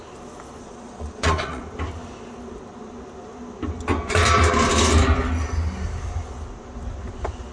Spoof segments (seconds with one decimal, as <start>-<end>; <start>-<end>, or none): 0.6-1.6